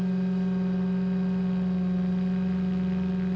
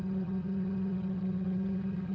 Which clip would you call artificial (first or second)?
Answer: second